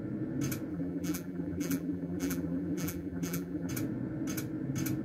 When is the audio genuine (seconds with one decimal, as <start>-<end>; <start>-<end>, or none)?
0.0-0.7; 3.7-5.0